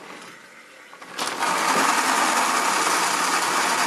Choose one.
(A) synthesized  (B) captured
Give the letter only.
B